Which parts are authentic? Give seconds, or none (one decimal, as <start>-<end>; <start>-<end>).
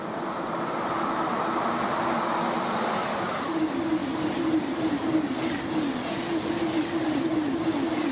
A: 0.0-8.1